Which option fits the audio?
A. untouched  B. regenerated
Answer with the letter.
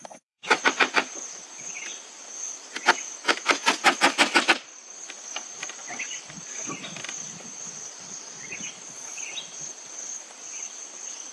B